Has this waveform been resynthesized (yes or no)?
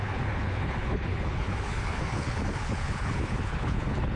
yes